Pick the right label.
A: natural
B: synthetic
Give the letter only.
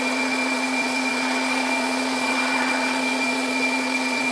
B